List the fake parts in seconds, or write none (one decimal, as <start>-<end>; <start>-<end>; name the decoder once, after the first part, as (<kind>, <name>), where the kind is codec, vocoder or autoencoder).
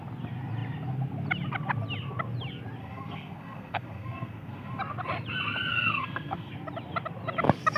2.8-4.8 (codec, SNAC); 5.7-6.5